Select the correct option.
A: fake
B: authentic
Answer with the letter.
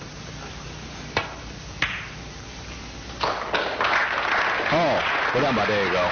B